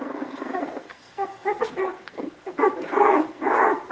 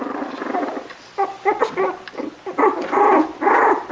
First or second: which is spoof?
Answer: first